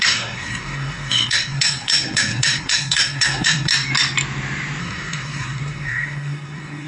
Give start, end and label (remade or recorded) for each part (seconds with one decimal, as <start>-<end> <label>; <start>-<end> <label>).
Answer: 0.0-3.7 remade; 3.7-4.8 recorded; 4.8-6.9 remade